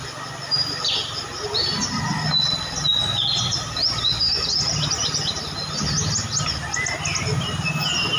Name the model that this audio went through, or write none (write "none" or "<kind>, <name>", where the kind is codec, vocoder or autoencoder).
none